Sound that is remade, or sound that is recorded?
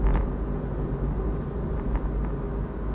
recorded